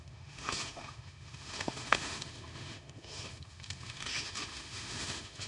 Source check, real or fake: fake